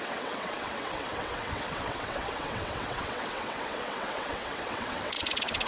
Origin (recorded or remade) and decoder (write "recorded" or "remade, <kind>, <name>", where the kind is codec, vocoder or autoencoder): remade, vocoder, WaveNeXt